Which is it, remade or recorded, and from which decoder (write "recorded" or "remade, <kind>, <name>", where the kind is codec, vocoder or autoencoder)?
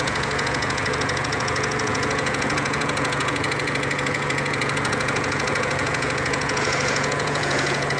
remade, vocoder, Vocos